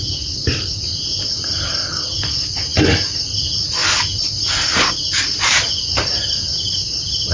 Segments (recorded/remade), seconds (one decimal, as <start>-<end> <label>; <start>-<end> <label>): 0.0-7.3 recorded